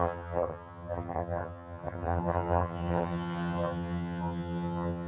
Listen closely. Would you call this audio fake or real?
fake